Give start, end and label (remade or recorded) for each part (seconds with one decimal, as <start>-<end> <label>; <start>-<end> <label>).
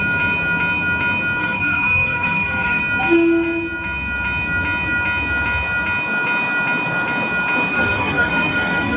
0.0-1.4 recorded; 1.4-2.8 remade; 2.8-7.7 recorded; 7.7-9.0 remade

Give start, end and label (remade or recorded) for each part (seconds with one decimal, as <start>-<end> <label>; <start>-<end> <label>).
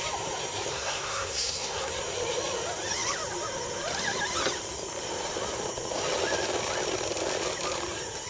0.0-0.7 recorded; 0.7-1.9 remade; 1.9-8.3 recorded